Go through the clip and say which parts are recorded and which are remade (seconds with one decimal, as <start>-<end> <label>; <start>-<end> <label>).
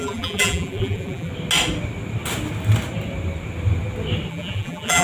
0.0-1.3 remade; 1.3-4.3 recorded; 4.3-5.0 remade